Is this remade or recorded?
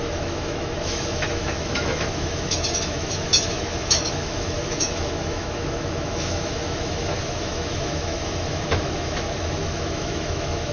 remade